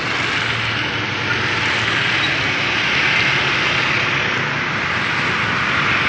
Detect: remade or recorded recorded